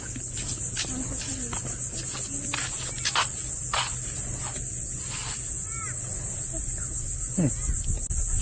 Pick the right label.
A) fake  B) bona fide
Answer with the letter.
B